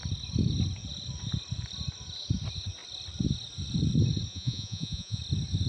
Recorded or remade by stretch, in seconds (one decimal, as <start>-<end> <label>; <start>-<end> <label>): 0.0-4.3 recorded; 4.3-5.2 remade; 5.2-5.7 recorded